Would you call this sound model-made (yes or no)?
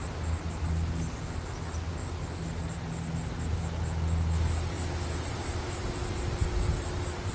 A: no